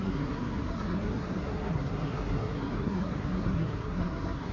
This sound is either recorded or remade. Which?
remade